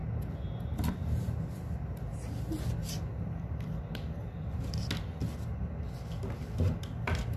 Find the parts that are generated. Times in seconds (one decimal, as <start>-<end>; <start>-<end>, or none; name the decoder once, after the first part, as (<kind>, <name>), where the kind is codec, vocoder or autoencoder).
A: 2.8-4.8 (vocoder, BigVGAN v2)